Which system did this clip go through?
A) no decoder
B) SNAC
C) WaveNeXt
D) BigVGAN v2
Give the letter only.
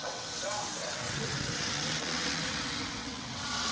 C